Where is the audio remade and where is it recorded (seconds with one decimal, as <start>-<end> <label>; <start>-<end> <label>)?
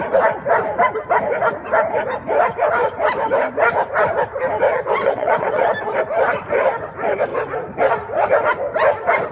0.0-4.7 recorded; 4.7-5.7 remade; 5.7-9.3 recorded